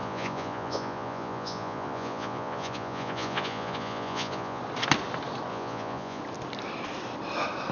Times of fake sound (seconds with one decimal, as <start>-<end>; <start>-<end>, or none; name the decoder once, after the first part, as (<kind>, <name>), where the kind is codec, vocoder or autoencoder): 0.0-4.6 (vocoder, Vocos); 5.5-6.2